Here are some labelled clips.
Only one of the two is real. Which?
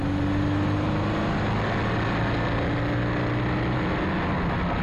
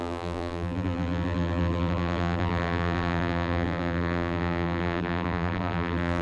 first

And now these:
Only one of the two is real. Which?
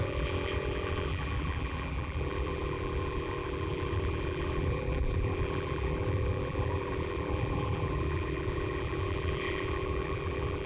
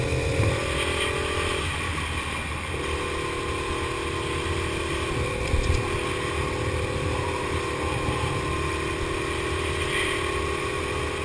second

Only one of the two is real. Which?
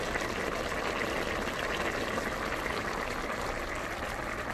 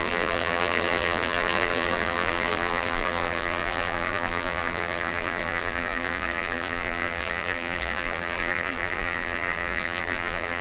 first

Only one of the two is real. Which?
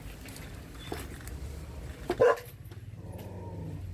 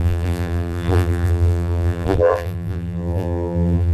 first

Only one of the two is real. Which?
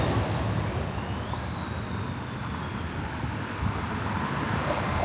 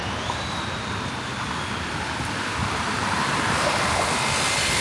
first